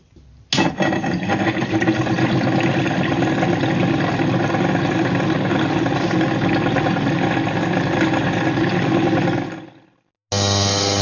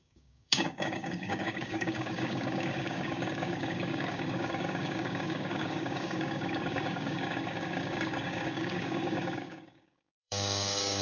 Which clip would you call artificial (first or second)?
second